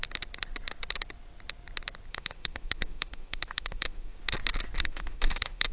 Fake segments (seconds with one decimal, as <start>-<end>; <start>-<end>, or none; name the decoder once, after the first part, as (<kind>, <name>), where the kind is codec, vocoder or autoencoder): 2.1-4.2 (autoencoder, DAC-VAE); 4.8-5.7